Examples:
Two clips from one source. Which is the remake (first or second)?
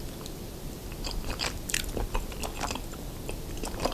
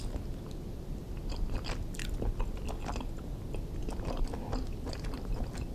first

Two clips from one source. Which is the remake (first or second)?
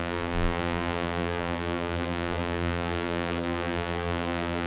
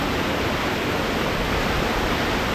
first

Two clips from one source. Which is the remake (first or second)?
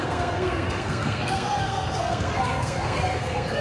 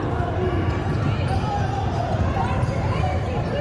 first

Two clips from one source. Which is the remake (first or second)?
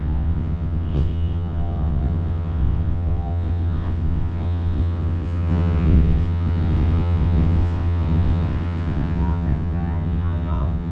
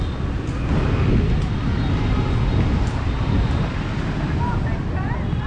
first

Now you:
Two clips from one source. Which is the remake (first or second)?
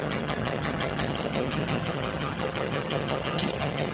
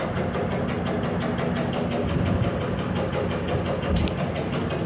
first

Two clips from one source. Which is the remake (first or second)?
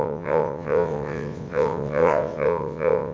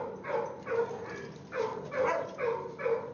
first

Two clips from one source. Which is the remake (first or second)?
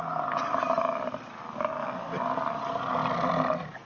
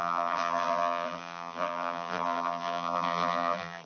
second